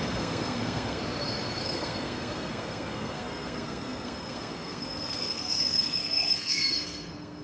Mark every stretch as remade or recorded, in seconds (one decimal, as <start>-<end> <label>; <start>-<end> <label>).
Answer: 0.0-1.0 remade; 1.0-1.6 recorded; 1.6-7.4 remade